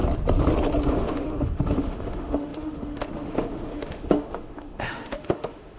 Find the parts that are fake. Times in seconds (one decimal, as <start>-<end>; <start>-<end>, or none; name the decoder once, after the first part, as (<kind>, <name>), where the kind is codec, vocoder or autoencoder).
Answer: 0.9-5.8 (autoencoder, DAC-VAE)